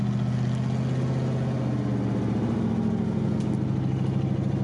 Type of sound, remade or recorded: recorded